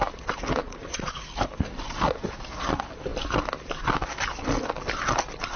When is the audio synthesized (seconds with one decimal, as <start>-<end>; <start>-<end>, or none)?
0.6-1.2